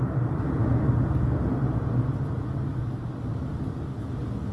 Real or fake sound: real